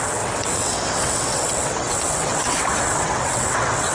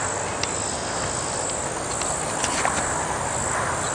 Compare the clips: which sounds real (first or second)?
second